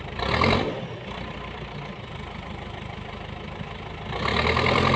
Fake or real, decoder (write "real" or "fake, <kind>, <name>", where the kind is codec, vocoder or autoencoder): fake, vocoder, BigVGAN v2